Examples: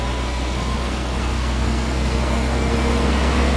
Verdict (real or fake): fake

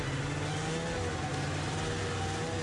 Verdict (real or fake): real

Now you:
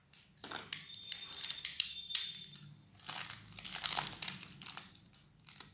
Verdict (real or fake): real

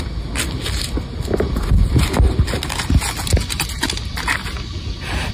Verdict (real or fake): real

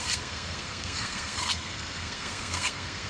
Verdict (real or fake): fake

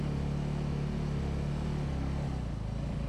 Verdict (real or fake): real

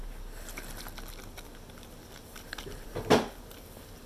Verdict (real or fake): real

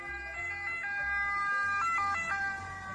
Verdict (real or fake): real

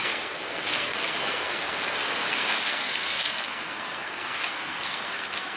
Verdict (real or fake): fake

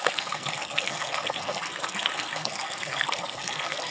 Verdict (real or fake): fake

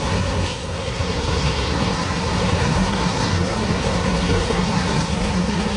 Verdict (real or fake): fake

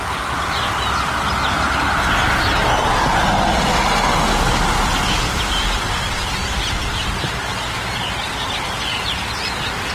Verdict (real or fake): real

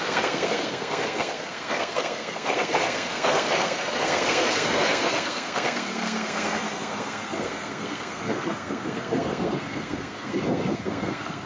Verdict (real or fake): fake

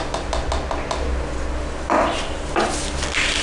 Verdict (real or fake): real